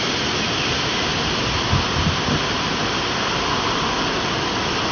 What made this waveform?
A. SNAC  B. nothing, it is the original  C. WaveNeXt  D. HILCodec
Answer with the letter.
B